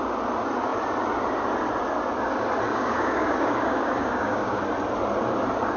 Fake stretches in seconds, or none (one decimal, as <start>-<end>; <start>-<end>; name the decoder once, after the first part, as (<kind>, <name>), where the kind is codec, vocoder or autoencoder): 2.7-4.6 (codec, DAC)